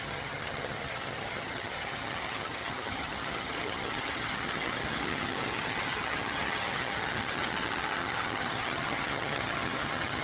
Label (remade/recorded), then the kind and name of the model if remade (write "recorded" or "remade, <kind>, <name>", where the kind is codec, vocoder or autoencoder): remade, vocoder, HiFi-GAN